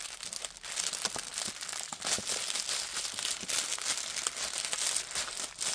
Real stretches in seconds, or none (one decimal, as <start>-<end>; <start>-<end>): 0.0-5.7